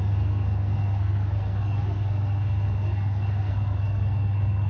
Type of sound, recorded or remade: remade